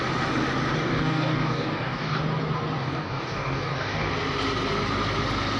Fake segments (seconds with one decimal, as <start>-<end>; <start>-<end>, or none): 0.8-2.2; 2.8-4.1